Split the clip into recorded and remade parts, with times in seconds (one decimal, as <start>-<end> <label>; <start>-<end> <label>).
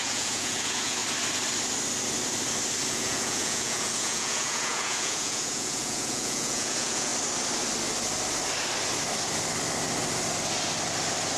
0.0-1.0 remade; 1.0-2.9 recorded; 2.9-7.1 remade; 7.1-11.4 recorded